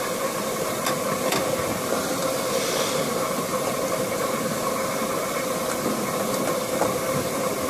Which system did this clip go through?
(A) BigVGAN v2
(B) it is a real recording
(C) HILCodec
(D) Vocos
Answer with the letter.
B